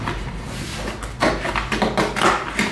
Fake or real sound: real